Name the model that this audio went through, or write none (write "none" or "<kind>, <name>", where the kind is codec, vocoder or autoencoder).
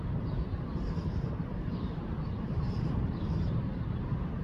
vocoder, BigVGAN v2